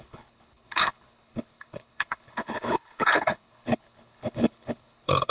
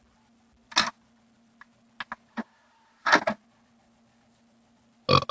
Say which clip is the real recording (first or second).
second